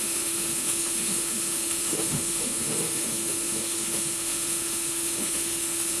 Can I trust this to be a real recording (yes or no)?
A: no